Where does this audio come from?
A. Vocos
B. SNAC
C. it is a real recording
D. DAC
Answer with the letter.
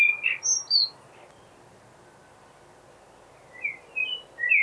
C